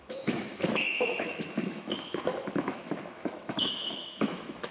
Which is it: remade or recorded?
remade